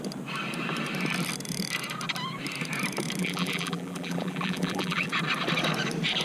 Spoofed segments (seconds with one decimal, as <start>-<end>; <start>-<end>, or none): 3.2-5.1